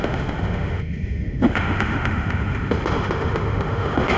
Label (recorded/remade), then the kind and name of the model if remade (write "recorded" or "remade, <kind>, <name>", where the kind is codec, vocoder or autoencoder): remade, autoencoder, DAC-VAE